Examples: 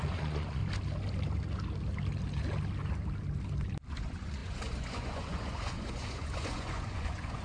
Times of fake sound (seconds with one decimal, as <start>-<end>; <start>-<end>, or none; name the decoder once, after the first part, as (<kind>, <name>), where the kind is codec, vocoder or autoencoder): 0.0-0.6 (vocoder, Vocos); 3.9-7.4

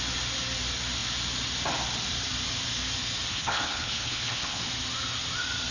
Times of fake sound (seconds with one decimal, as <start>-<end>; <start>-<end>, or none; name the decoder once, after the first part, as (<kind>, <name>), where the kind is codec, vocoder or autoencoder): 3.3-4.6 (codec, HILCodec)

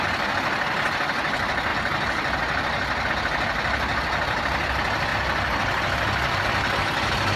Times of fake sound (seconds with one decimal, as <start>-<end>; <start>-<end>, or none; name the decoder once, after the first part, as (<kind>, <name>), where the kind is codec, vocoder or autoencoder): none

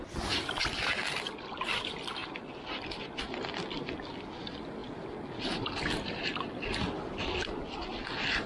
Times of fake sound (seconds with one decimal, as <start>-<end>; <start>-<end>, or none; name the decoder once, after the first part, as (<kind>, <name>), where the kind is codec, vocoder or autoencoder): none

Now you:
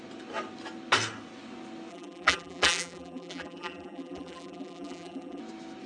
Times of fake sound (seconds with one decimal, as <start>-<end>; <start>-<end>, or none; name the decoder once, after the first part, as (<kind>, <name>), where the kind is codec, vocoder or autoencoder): 1.9-5.4 (vocoder, BigVGAN v2)

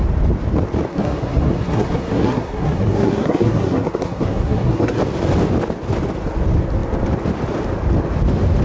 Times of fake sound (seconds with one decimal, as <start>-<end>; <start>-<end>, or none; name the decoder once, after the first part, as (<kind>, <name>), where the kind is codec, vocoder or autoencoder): 0.9-5.0 (codec, SNAC)

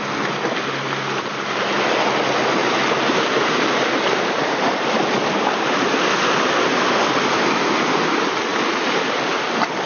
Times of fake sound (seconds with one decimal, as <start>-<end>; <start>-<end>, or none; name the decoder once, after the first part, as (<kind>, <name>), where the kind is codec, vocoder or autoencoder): 2.6-4.6 (vocoder, BigVGAN v2); 8.5-9.5

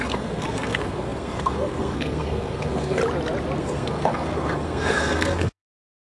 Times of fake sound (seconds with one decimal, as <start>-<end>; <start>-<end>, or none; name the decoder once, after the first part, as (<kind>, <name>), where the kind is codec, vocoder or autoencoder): 0.0-3.0 (codec, SNAC); 3.6-6.1